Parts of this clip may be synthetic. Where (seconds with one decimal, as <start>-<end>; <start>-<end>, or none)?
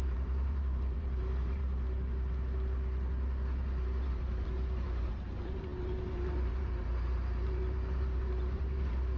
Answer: 0.0-1.6; 4.1-9.2